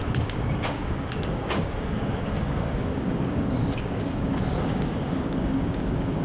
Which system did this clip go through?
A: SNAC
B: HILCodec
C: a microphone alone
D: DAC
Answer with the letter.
D